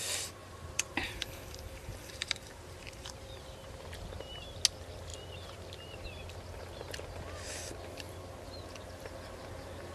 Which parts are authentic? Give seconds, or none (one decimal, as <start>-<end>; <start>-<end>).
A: 0.0-0.4; 3.8-9.9